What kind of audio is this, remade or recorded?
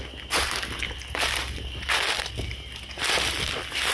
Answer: recorded